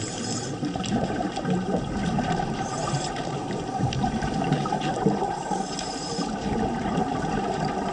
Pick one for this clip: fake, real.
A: fake